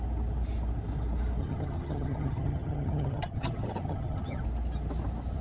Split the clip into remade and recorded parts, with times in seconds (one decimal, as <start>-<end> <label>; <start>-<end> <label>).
0.0-1.4 recorded; 1.4-4.4 remade; 4.4-5.4 recorded